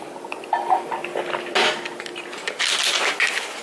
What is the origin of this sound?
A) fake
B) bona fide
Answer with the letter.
B